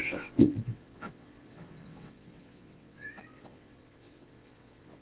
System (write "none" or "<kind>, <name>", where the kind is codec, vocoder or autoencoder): vocoder, WaveNeXt